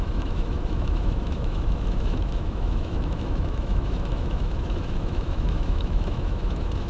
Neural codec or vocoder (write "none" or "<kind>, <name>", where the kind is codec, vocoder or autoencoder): autoencoder, DAC-VAE